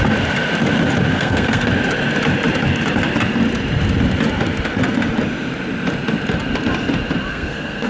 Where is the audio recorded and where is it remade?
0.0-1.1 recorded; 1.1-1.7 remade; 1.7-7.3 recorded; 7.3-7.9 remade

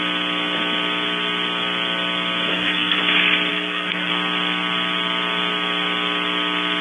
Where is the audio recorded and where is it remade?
0.0-2.5 recorded; 2.5-3.0 remade; 3.0-3.5 recorded; 3.5-4.1 remade; 4.1-6.8 recorded

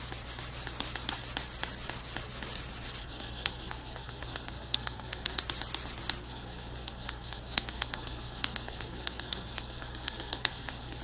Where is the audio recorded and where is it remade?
0.0-3.0 recorded; 3.0-5.4 remade; 5.4-6.2 recorded; 6.2-11.0 remade

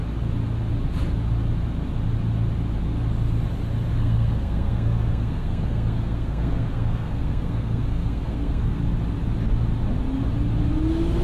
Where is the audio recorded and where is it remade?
0.0-3.9 recorded; 3.9-8.8 remade; 8.8-11.2 recorded